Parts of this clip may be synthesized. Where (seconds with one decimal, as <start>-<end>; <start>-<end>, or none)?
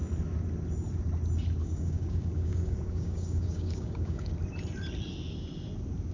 1.6-4.3